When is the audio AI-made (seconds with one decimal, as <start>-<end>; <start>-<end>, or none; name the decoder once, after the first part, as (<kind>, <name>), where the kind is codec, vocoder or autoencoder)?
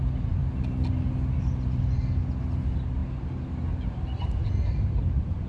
none